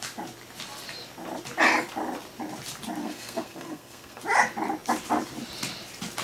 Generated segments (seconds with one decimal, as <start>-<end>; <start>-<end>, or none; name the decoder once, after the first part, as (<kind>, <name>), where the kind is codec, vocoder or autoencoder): 3.0-4.2 (codec, SNAC)